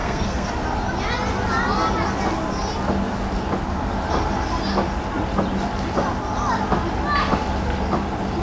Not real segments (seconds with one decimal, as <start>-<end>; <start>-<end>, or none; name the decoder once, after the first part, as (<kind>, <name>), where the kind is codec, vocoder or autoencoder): 0.0-0.5 (codec, SNAC)